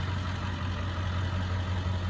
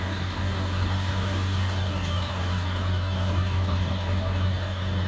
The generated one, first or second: second